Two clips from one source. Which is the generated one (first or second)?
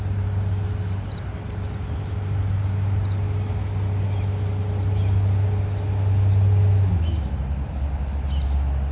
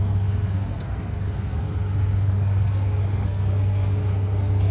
second